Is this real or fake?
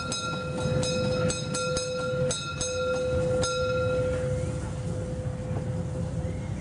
real